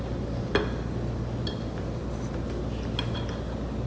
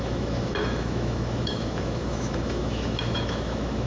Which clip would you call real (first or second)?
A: first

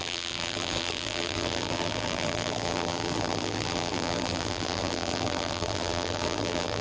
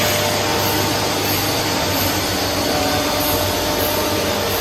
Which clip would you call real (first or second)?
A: second